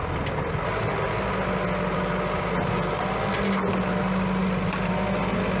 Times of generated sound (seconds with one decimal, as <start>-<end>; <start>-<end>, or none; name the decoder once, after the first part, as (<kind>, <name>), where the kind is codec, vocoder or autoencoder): none